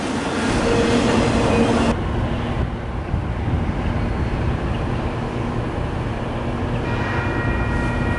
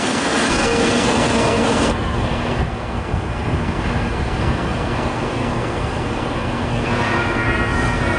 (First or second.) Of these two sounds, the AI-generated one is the second